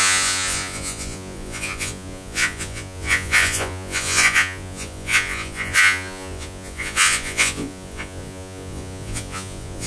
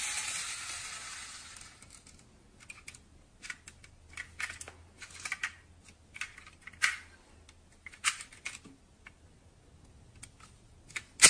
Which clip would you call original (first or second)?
second